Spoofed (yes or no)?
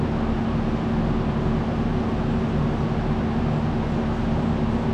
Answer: no